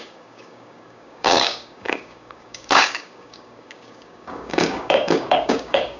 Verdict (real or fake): fake